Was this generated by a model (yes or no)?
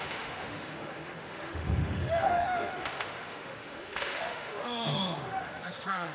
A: yes